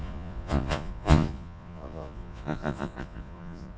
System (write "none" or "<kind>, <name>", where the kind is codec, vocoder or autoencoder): vocoder, Vocos